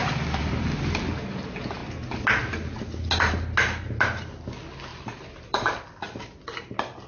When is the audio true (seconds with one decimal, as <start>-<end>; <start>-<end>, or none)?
1.4-4.9; 5.8-7.1

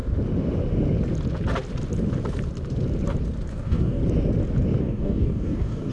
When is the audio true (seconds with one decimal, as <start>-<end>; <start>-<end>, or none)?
0.0-3.5; 4.0-4.8

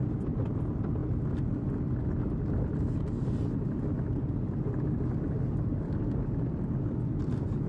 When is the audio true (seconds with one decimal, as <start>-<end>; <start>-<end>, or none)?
0.0-7.7